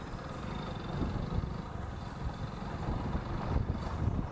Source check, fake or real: real